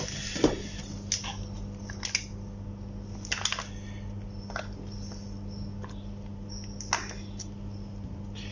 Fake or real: real